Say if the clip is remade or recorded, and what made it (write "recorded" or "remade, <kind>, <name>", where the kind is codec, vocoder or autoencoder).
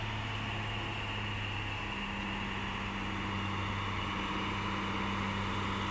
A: recorded